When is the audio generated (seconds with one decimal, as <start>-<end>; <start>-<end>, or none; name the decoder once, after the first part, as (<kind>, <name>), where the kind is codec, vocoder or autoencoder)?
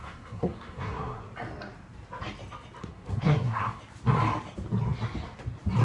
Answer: 0.0-1.2 (codec, SNAC); 2.8-3.8